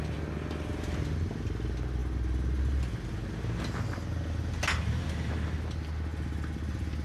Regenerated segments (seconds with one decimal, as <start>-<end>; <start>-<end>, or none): none